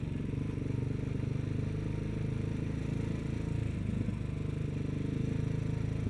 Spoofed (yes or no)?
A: no